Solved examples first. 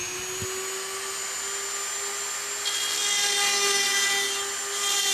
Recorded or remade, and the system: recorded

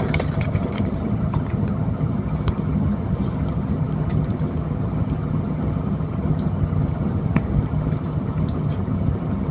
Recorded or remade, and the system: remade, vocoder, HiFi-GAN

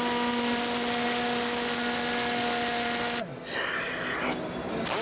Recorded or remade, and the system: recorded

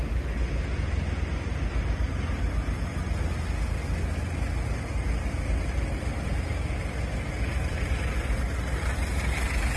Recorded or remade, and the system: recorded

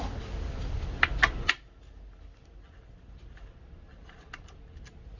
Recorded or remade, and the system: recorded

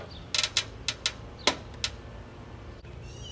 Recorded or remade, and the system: recorded